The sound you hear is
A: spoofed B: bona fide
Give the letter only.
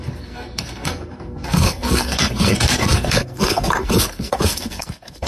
A